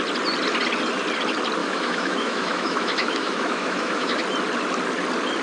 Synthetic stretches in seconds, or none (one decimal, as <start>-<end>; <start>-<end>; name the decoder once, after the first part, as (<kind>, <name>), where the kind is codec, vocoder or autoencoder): 1.6-4.2 (autoencoder, DAC-VAE)